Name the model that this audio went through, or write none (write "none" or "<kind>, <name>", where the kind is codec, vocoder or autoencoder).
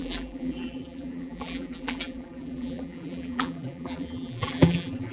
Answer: vocoder, BigVGAN v2